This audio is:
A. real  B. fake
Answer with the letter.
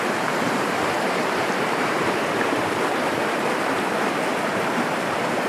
B